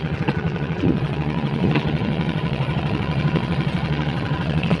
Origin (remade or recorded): remade